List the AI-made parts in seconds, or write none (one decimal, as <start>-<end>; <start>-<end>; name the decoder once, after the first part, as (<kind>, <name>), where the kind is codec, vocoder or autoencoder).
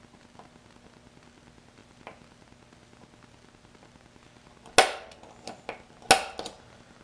none